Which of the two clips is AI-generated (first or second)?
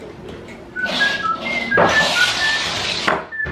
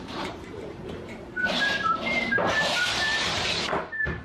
second